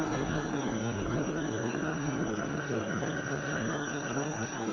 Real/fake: fake